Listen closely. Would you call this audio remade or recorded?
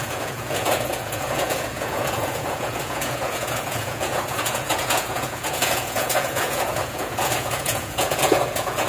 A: remade